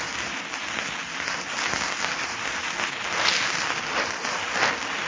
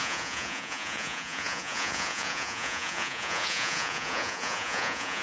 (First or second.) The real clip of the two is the first